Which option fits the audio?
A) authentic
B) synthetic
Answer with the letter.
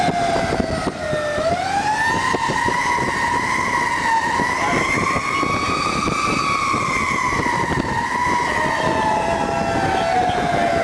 A